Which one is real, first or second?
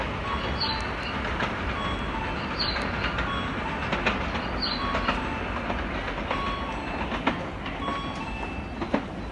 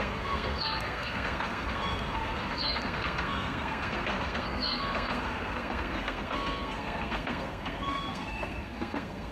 first